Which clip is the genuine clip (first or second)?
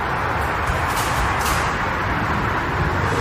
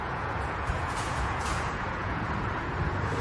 first